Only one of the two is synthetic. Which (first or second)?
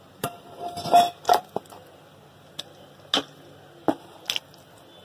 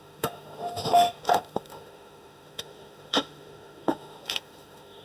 second